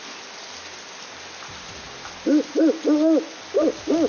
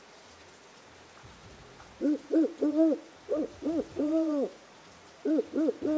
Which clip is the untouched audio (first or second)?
first